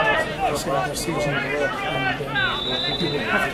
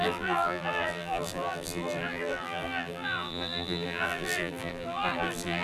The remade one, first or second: second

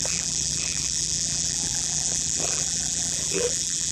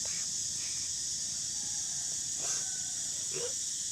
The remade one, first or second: first